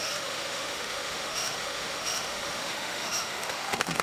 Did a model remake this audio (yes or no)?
yes